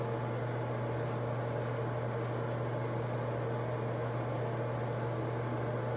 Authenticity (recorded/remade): recorded